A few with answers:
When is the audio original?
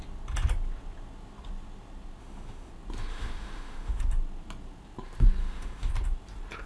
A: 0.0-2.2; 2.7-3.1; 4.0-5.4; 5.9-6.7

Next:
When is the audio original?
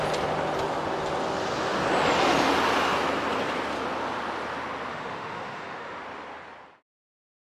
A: 0.0-4.9; 6.0-7.4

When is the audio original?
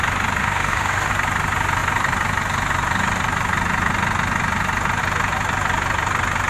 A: 0.0-0.4; 1.1-6.5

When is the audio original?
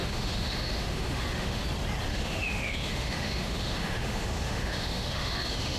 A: 1.6-2.1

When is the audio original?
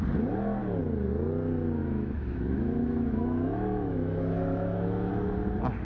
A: 0.0-1.8; 5.1-5.8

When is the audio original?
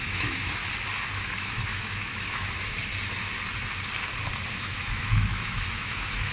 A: 0.6-1.1; 2.9-4.5